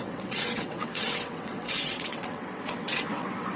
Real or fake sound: fake